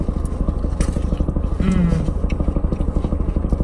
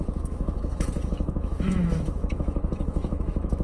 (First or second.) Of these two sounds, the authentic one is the first